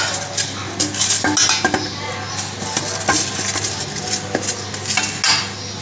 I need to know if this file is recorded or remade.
recorded